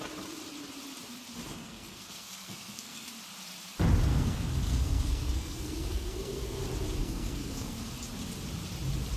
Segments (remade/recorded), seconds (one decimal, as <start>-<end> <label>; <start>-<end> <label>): 0.0-1.5 recorded; 1.5-3.1 remade; 3.1-4.1 recorded; 4.1-6.6 remade; 6.6-7.0 recorded; 7.0-7.9 remade; 7.9-9.2 recorded

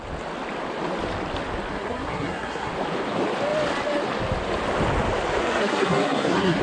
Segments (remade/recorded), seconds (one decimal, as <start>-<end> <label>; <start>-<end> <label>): 0.0-1.7 recorded; 1.7-2.7 remade; 2.7-5.4 recorded; 5.4-6.6 remade

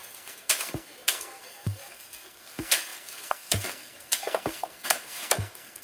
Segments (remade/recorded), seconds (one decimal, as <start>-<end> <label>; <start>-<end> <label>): 0.0-5.8 remade

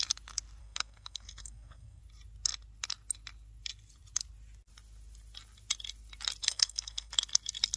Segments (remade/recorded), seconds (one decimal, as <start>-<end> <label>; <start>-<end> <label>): 0.0-0.6 recorded; 0.6-2.0 remade; 2.0-6.4 recorded; 6.4-7.1 remade; 7.1-7.8 recorded

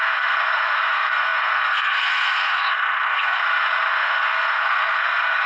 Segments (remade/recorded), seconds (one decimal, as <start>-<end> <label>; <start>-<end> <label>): 0.0-3.4 remade; 3.4-3.9 recorded; 3.9-5.5 remade